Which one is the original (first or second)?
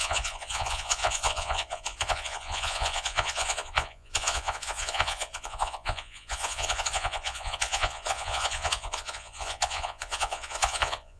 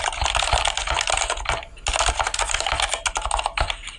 second